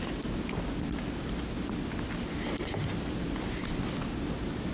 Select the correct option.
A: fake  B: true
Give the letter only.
B